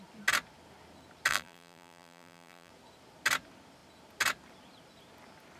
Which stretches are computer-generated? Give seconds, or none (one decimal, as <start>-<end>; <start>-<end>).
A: 1.3-2.7